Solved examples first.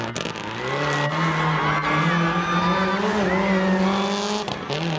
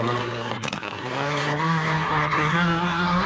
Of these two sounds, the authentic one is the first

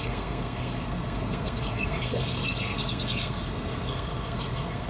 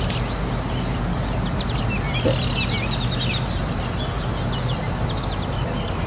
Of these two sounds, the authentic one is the second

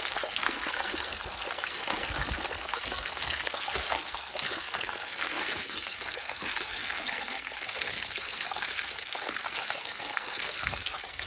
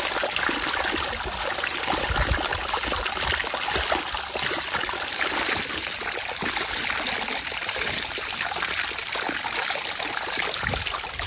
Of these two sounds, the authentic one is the second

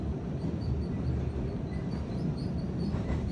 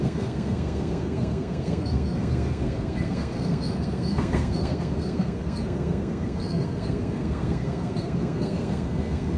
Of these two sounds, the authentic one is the first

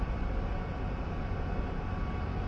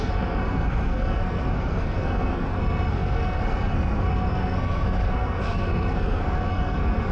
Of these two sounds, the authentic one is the first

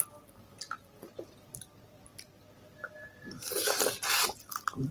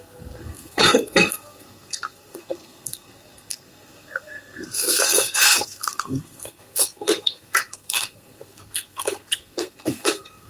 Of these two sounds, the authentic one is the first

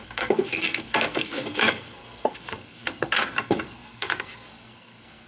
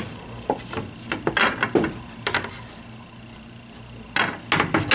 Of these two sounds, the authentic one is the second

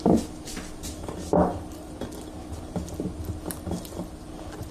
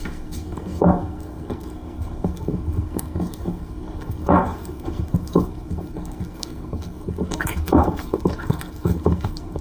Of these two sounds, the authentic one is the first